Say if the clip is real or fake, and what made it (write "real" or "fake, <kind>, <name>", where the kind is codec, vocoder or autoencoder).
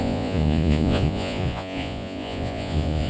fake, vocoder, Vocos